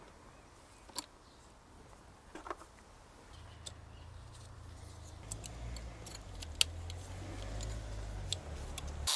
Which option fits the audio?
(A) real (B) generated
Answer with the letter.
A